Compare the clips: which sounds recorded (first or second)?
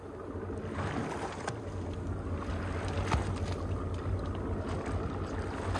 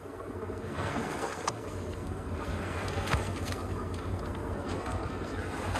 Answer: first